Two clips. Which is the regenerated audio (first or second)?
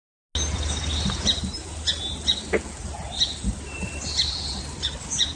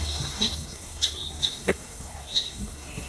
second